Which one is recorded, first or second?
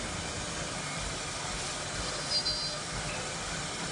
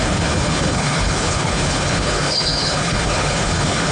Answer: first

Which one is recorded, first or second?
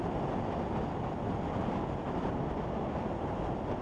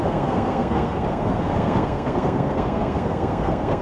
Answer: first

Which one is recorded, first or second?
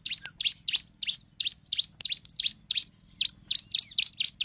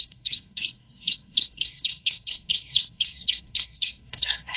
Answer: first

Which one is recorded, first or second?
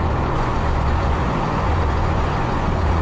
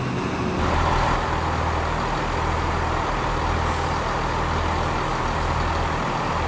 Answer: second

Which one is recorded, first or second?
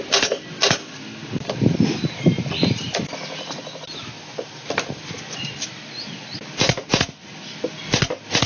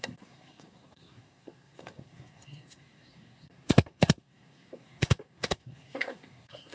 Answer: first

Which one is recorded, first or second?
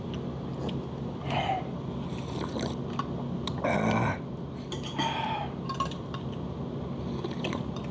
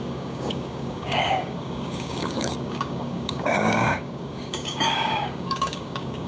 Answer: first